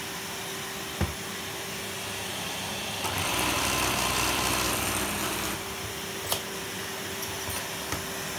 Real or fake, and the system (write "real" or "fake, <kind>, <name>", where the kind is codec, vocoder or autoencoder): real